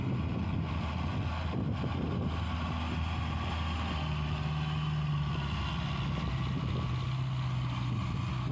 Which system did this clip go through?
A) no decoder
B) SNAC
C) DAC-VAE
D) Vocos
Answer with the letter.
A